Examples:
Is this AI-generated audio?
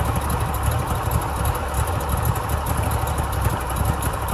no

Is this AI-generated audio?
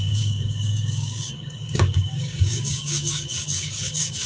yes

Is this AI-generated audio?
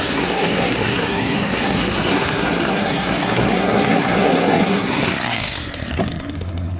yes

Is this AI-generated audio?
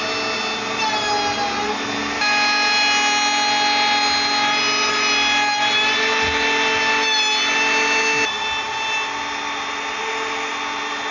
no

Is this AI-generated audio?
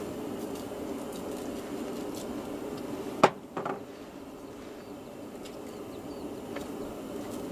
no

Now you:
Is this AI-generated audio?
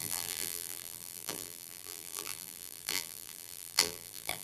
yes